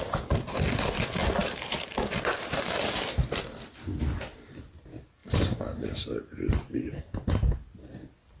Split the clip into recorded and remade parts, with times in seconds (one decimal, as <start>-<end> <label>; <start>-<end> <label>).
0.0-1.4 recorded; 1.4-2.8 remade; 2.8-5.2 recorded; 5.2-7.0 remade; 7.0-8.4 recorded